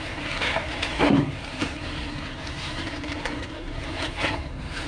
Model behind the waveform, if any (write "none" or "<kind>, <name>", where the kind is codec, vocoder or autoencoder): codec, SNAC